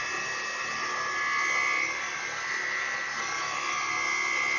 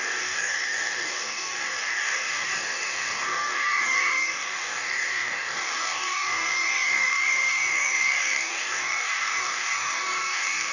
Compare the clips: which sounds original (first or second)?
first